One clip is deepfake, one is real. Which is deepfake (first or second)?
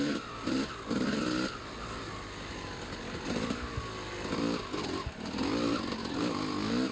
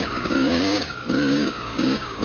second